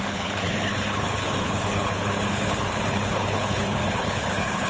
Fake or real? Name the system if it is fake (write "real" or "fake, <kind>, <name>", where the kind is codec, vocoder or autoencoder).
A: fake, codec, HILCodec